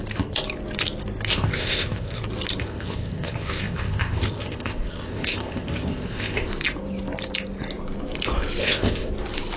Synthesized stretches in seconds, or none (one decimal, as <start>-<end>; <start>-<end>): 1.3-2.2; 2.6-6.5; 8.6-9.1